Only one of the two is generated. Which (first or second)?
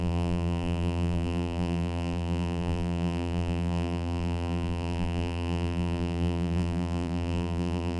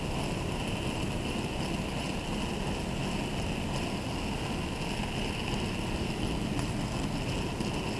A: first